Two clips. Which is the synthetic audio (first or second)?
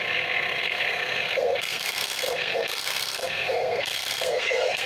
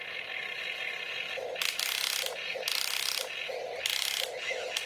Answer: first